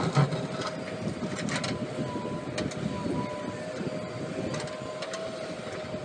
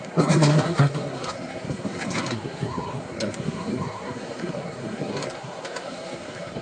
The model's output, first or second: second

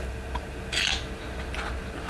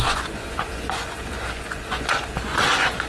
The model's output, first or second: second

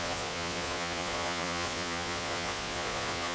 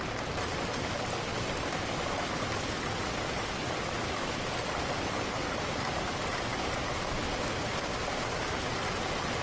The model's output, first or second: first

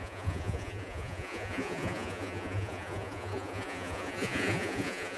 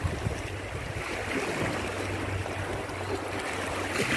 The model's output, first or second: first